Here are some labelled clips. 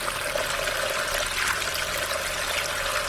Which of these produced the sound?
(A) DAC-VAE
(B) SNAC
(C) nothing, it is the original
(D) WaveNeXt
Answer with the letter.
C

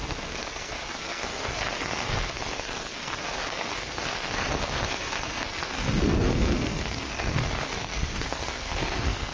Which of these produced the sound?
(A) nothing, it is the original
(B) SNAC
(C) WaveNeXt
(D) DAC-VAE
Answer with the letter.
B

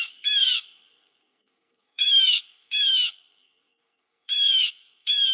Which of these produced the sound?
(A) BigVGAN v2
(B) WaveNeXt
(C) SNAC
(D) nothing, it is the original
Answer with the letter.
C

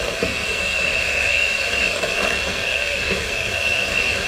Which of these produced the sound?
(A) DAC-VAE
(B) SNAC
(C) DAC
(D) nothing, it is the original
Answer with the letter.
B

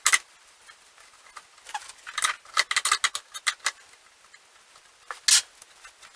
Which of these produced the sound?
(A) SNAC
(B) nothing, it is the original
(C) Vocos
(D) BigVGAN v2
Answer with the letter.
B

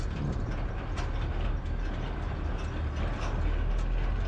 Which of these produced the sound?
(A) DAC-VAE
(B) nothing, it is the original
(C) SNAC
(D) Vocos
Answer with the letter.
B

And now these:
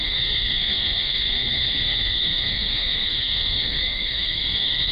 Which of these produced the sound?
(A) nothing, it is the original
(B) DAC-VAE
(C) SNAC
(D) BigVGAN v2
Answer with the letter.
C